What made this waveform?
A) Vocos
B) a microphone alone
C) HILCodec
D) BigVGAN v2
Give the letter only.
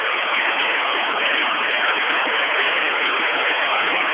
C